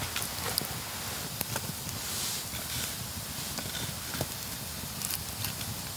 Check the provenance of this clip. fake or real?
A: real